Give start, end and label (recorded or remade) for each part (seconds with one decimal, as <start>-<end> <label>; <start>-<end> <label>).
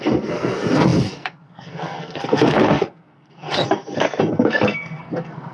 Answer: 0.0-5.5 remade